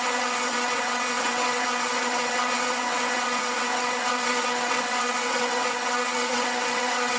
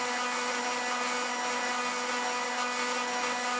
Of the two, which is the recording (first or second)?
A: second